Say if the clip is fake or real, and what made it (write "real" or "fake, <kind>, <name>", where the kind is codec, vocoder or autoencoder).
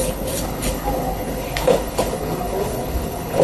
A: fake, codec, HILCodec